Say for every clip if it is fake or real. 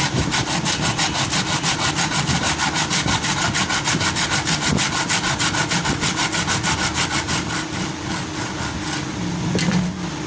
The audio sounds real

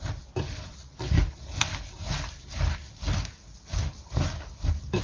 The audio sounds real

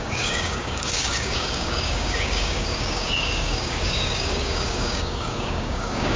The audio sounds fake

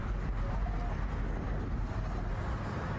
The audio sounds real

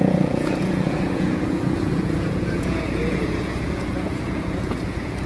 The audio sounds fake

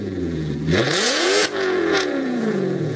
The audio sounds fake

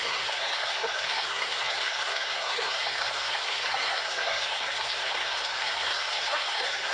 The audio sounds fake